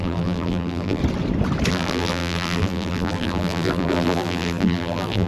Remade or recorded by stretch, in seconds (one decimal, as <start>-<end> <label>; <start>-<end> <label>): 0.0-1.0 remade; 1.0-1.7 recorded; 1.7-5.3 remade